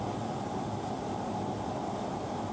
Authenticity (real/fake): real